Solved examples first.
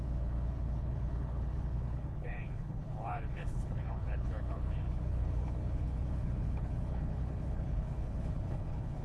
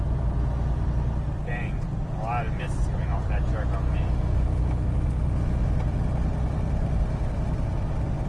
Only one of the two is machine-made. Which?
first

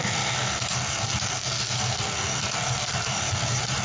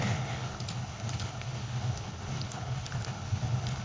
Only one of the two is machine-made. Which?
second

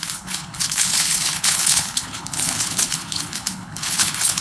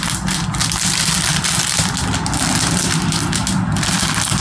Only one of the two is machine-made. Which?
first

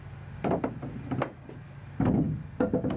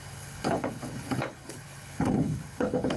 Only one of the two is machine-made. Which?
second